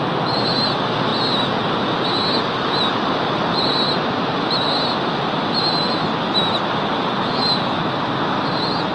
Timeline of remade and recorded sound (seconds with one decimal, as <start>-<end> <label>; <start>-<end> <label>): 0.0-8.9 recorded